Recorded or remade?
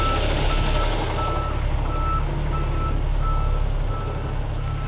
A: recorded